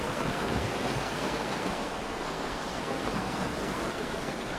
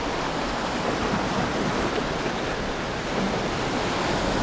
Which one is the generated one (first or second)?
first